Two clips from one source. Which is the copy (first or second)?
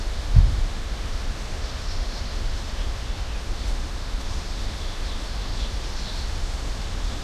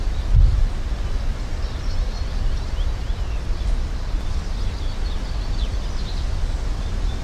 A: first